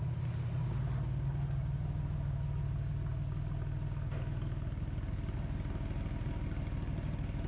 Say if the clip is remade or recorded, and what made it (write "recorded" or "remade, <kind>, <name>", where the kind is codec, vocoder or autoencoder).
recorded